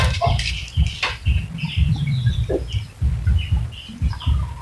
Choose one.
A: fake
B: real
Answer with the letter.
A